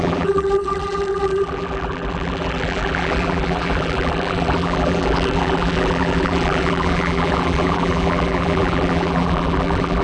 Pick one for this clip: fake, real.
fake